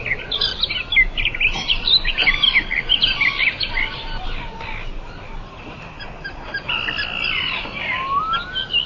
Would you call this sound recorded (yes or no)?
yes